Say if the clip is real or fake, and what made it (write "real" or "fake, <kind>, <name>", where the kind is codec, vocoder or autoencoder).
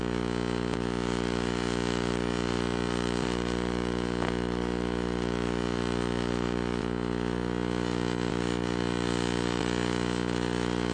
fake, autoencoder, DAC-VAE